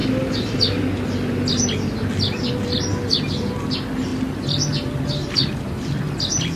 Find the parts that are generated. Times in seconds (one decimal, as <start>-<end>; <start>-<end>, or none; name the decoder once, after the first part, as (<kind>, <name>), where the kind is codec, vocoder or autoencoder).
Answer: none